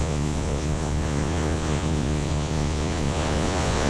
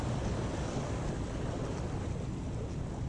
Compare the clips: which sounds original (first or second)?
second